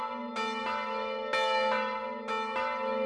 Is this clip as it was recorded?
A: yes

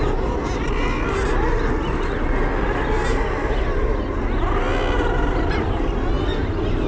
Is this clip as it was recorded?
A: yes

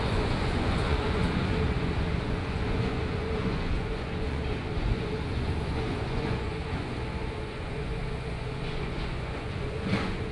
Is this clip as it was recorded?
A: no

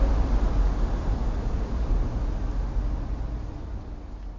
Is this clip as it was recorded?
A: yes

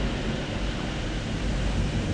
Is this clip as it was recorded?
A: yes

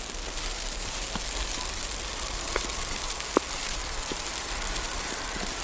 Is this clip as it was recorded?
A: yes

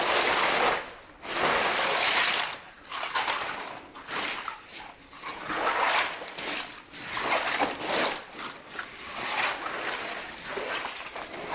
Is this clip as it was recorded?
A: yes